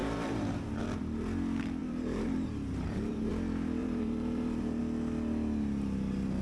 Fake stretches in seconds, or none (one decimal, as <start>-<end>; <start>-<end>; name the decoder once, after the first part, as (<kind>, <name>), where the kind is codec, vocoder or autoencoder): 0.0-0.8 (vocoder, BigVGAN v2); 1.8-3.3; 3.8-4.8